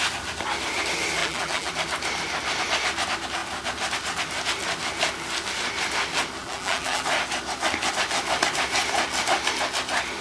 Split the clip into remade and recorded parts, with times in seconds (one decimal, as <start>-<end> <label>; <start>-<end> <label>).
0.0-1.2 recorded; 1.2-1.7 remade; 1.7-6.4 recorded; 6.4-7.0 remade; 7.0-10.2 recorded